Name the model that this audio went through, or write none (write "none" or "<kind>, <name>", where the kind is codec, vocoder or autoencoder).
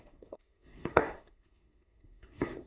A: codec, SNAC